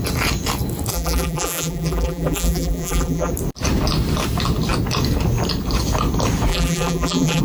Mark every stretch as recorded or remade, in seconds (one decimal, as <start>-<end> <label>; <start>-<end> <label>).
0.0-0.9 recorded; 0.9-3.3 remade; 3.3-6.5 recorded; 6.5-7.4 remade